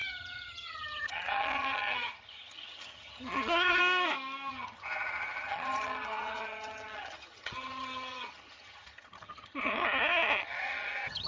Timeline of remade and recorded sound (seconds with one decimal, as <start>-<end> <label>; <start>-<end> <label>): 0.0-3.8 remade; 3.8-4.5 recorded; 4.5-11.3 remade